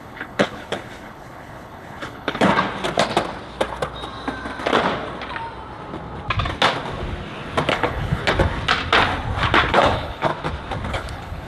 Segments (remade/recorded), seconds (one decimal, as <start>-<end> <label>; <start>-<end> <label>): 0.0-2.5 remade; 2.5-7.7 recorded; 7.7-8.2 remade; 8.2-9.7 recorded; 9.7-10.3 remade; 10.3-10.9 recorded; 10.9-11.5 remade